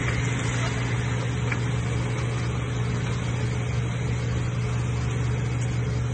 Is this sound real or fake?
real